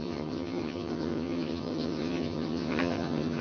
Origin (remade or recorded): remade